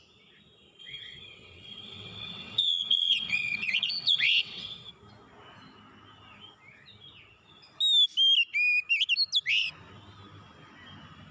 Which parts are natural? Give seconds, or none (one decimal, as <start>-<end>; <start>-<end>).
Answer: 0.0-0.8; 4.9-11.3